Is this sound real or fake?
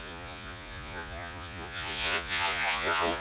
fake